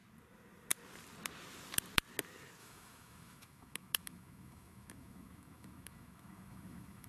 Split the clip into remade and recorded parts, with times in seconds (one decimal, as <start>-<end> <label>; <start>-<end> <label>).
0.0-2.6 recorded; 2.6-7.1 remade